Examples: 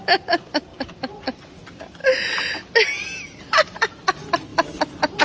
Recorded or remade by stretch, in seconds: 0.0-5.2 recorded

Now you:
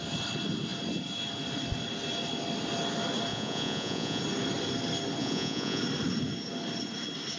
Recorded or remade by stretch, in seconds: 0.0-3.3 recorded; 3.3-4.2 remade; 4.2-5.2 recorded; 5.2-5.8 remade; 5.8-7.4 recorded

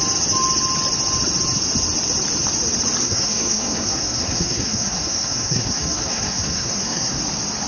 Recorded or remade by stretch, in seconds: 0.0-3.0 recorded; 3.0-7.2 remade; 7.2-7.7 recorded

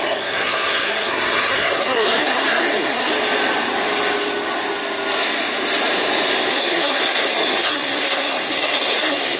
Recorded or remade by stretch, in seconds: 0.0-3.1 remade; 3.1-6.5 recorded; 6.5-9.4 remade

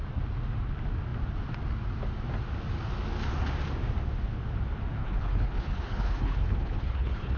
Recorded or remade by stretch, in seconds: 0.0-5.0 recorded; 5.0-7.4 remade

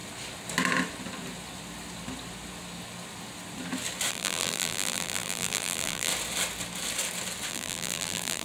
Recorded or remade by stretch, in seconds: 0.0-4.1 recorded; 4.1-6.1 remade; 6.1-7.5 recorded; 7.5-8.4 remade